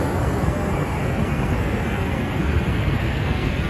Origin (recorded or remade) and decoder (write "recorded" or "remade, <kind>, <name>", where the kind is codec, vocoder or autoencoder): remade, codec, SNAC